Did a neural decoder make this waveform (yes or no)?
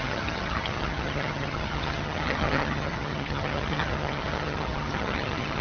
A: yes